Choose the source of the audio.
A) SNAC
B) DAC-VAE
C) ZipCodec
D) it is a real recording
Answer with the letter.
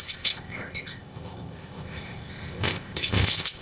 C